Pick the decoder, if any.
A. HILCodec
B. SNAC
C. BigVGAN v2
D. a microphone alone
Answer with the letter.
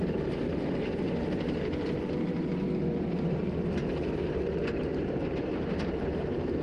D